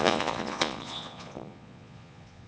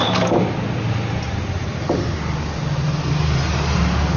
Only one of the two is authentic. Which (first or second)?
second